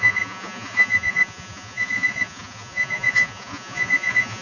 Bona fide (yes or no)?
no